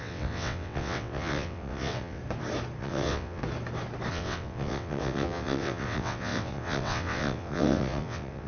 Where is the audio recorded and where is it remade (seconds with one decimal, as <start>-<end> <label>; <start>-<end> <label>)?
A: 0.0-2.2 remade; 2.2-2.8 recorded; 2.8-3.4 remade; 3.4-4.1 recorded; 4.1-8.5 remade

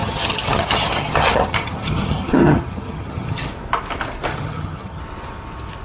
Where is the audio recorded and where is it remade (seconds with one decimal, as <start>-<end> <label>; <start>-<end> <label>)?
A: 0.0-3.5 remade; 3.5-4.3 recorded; 4.3-5.0 remade; 5.0-5.8 recorded

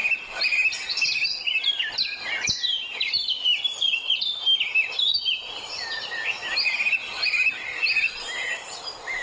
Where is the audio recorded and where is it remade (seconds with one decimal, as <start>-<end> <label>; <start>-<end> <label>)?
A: 0.0-9.2 recorded